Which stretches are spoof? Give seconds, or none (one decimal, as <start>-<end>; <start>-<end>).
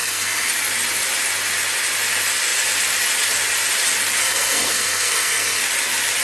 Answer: 0.0-0.5; 4.2-5.6